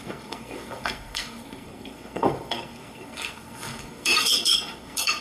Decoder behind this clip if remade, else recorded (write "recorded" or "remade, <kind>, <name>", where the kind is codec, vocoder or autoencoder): remade, codec, SNAC